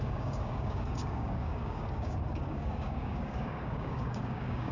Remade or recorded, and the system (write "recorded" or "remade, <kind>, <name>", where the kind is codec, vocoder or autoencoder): remade, codec, DAC